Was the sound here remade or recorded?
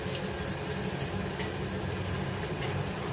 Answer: recorded